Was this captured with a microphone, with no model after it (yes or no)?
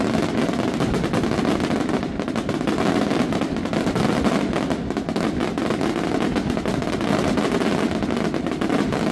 yes